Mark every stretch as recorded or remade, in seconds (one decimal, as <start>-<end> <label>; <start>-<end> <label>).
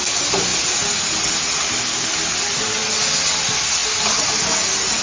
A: 0.0-5.0 recorded